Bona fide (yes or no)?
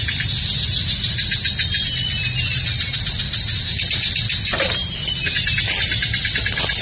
yes